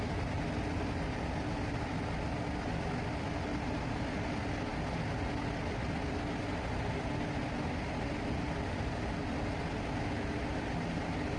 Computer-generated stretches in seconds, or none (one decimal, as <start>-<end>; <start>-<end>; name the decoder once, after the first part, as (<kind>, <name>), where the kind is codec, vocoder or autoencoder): none